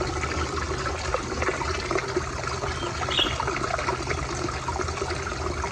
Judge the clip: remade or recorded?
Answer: recorded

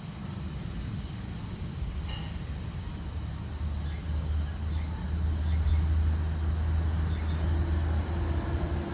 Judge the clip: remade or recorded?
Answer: recorded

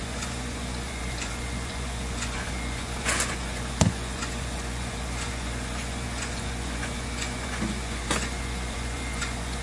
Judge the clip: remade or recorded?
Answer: remade